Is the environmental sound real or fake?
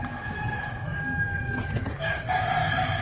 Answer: real